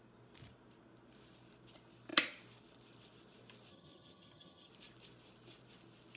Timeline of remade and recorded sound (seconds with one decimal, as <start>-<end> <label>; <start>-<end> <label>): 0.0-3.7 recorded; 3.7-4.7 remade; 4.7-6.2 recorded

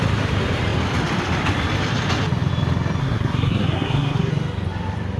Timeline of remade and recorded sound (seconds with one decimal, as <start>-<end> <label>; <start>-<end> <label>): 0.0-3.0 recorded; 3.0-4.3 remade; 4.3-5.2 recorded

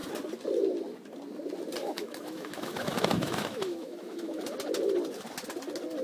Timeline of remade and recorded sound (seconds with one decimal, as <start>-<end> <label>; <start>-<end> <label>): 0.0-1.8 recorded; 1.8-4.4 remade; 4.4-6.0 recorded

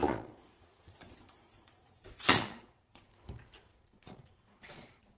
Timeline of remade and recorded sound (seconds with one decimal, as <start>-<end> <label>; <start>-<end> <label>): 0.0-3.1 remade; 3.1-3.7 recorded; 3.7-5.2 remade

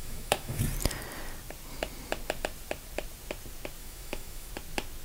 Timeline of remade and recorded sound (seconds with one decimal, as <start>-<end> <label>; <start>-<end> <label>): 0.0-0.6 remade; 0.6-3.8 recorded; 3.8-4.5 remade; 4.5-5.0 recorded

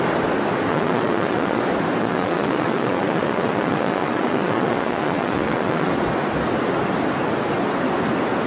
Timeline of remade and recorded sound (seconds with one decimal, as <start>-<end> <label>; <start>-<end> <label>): 0.0-0.7 recorded; 0.7-1.6 remade; 1.6-2.0 recorded; 2.0-5.9 remade; 5.9-8.5 recorded

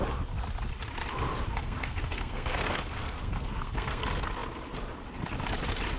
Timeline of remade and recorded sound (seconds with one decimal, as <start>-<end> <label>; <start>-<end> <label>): 0.0-1.5 recorded; 1.5-4.0 remade; 4.0-6.0 recorded

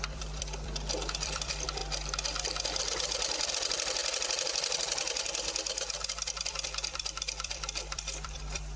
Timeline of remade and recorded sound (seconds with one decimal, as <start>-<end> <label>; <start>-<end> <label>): 0.0-1.8 remade; 1.8-3.5 recorded; 3.5-4.0 remade; 4.0-5.3 recorded; 5.3-8.8 remade